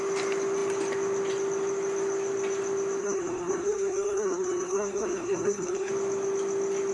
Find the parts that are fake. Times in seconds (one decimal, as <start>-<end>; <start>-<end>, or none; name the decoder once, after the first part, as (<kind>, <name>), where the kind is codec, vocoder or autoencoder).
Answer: 3.0-5.9 (codec, SNAC)